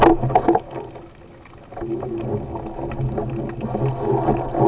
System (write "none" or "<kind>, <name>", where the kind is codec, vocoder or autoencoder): none